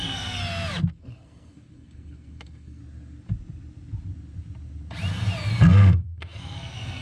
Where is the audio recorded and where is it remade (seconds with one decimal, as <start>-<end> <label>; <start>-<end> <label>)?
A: 0.0-0.4 remade; 0.4-0.9 recorded; 0.9-2.8 remade; 2.8-5.5 recorded; 5.5-7.0 remade